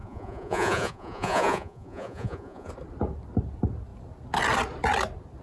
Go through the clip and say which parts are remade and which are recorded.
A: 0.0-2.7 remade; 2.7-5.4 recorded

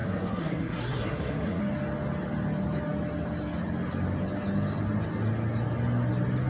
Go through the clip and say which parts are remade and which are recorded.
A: 0.0-1.6 remade; 1.6-6.5 recorded

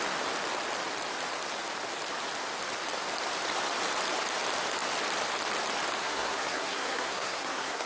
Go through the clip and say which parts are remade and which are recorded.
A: 0.0-6.0 recorded; 6.0-7.9 remade

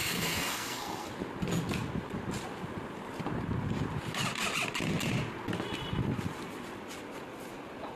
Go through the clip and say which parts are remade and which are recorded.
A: 0.0-1.1 remade; 1.1-8.0 recorded

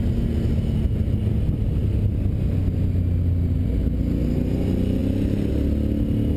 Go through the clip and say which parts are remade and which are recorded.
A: 0.0-6.4 recorded

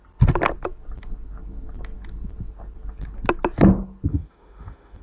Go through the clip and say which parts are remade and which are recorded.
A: 0.0-4.1 recorded; 4.1-5.0 remade

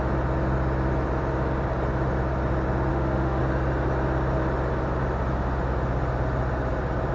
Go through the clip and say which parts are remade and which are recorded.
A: 0.0-2.9 recorded; 2.9-3.4 remade; 3.4-7.1 recorded

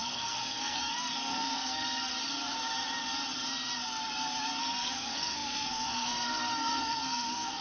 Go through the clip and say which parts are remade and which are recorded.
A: 0.0-2.1 remade; 2.1-4.6 recorded; 4.6-7.6 remade